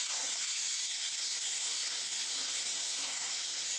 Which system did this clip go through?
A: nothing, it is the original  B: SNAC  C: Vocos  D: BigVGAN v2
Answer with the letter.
B